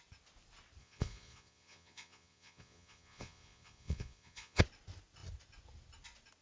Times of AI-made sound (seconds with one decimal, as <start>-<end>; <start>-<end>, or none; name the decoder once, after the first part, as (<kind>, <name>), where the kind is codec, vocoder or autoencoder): 0.8-4.6 (vocoder, Vocos)

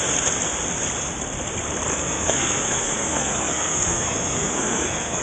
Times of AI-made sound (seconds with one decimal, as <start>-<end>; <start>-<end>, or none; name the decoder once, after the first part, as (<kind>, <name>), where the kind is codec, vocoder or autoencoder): 1.9-5.2 (codec, SNAC)

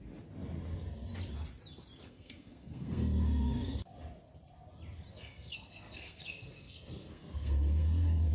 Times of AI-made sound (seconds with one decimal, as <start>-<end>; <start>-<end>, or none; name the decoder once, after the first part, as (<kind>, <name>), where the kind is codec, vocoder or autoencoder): 2.0-3.8 (codec, SNAC); 5.1-8.3

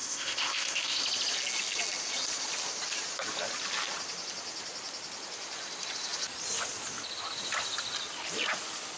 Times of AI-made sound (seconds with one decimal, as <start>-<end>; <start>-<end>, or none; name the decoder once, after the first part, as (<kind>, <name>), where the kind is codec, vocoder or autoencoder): 0.0-1.0 (codec, ZipCodec)

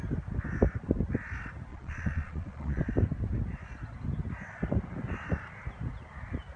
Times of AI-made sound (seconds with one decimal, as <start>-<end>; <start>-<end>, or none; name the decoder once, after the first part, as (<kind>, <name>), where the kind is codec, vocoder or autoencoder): 1.7-2.8 (vocoder, Vocos)